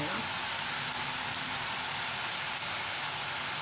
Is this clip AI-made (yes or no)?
no